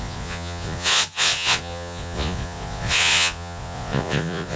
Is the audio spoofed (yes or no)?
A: yes